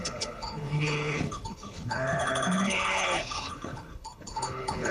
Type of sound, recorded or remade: remade